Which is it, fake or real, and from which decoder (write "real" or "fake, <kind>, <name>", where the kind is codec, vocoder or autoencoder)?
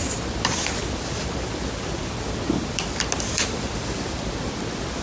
real